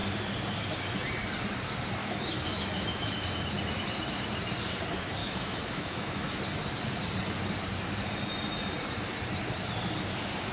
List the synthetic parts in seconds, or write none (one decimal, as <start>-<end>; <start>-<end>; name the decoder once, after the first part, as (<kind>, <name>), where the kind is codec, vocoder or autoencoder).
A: 2.0-3.1 (autoencoder, DAC-VAE); 5.2-6.4